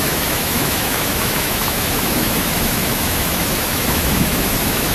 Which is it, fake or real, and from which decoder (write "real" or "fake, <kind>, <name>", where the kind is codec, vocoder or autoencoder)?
fake, autoencoder, DAC-VAE